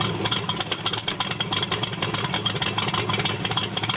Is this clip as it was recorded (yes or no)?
yes